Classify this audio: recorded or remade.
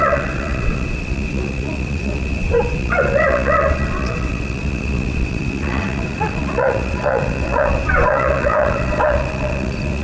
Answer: remade